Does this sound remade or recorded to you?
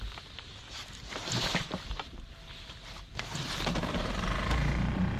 remade